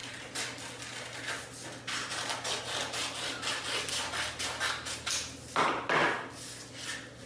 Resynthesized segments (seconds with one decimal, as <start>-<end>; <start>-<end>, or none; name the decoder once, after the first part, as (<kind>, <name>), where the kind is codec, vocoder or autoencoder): none